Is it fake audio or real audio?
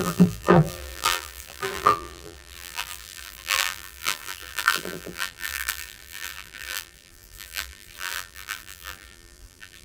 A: fake